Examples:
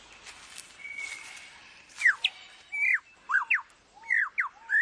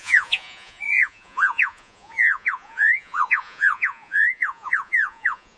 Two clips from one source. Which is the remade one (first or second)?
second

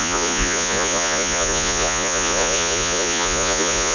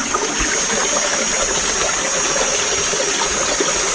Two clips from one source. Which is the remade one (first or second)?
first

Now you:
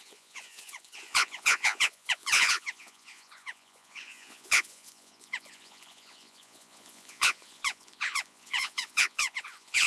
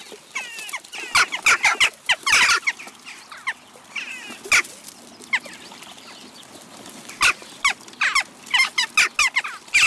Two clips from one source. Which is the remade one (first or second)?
first